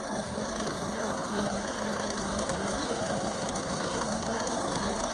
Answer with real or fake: fake